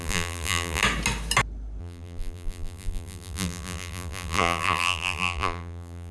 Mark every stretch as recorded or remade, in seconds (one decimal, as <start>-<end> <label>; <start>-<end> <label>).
0.0-0.8 remade; 0.8-1.8 recorded; 1.8-6.1 remade